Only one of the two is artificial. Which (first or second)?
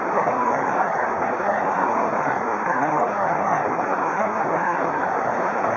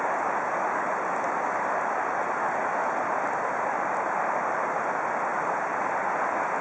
first